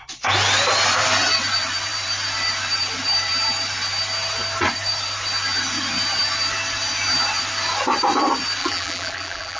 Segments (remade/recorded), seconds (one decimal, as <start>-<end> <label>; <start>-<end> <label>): 0.0-8.6 recorded; 8.6-9.6 remade